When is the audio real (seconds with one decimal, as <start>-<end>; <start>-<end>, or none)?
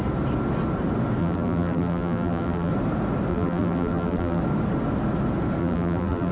0.0-1.2; 2.7-3.3; 4.4-5.6